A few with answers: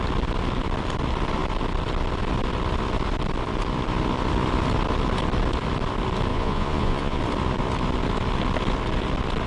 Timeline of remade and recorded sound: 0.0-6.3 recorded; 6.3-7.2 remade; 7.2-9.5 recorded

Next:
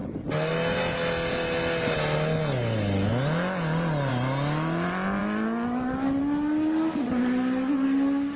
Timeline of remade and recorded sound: 0.0-8.4 recorded

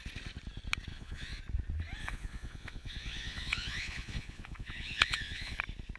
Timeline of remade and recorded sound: 0.0-0.9 recorded; 0.9-1.4 remade; 1.4-2.0 recorded; 2.0-5.6 remade; 5.6-6.0 recorded

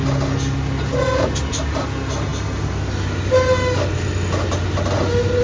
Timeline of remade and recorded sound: 0.0-5.4 recorded

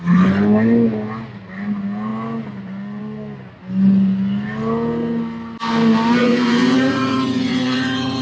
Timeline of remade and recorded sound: 0.0-6.2 recorded; 6.2-8.2 remade

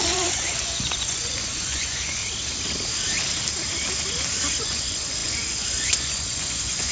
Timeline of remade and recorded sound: 0.0-2.2 remade; 2.2-4.6 recorded; 4.6-6.9 remade

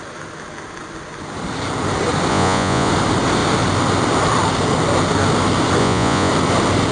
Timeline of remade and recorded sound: 0.0-2.3 recorded; 2.3-2.9 remade; 2.9-5.8 recorded; 5.8-6.3 remade; 6.3-6.9 recorded